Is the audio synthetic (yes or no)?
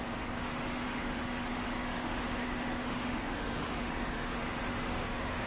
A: yes